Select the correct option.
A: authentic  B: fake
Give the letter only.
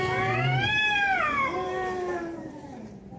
B